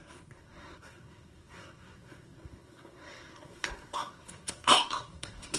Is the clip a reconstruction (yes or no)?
yes